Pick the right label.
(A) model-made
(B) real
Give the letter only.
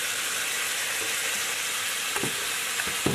B